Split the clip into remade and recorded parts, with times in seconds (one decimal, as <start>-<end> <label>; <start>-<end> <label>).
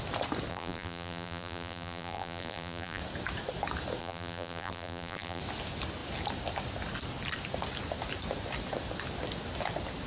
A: 0.0-0.5 recorded; 0.5-3.0 remade; 3.0-4.0 recorded; 4.0-5.4 remade; 5.4-10.1 recorded